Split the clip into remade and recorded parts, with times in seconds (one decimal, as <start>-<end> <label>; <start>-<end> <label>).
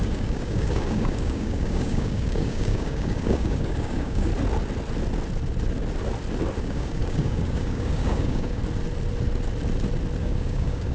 0.0-4.3 remade; 4.3-6.6 recorded; 6.6-8.6 remade; 8.6-10.2 recorded; 10.2-10.9 remade